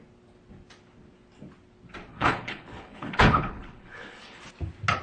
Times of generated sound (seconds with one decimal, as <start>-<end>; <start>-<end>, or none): 2.1-4.4

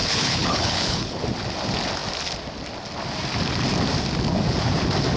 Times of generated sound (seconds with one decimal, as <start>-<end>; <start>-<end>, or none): 0.0-1.2

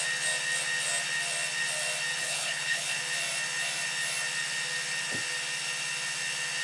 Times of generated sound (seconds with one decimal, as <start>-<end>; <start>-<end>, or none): 2.2-3.0

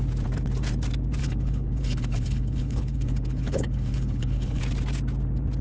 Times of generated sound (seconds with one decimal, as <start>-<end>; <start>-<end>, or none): 1.2-4.6

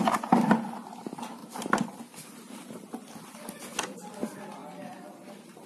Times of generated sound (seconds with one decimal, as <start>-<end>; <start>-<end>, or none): none